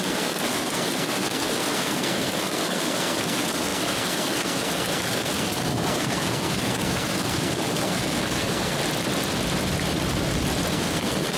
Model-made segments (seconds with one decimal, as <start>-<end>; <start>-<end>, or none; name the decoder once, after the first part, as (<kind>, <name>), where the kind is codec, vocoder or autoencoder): 0.0-8.8 (codec, SNAC); 10.7-11.4